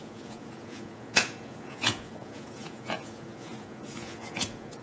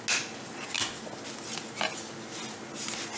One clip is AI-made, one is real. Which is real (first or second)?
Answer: second